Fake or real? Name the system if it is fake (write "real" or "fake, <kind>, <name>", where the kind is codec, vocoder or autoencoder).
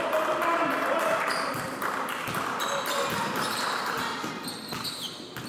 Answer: real